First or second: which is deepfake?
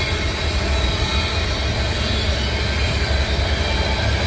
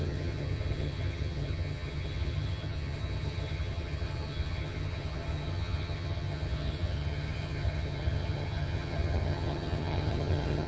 second